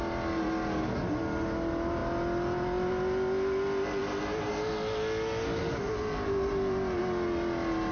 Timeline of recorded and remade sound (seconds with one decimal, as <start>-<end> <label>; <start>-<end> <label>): 0.0-7.9 recorded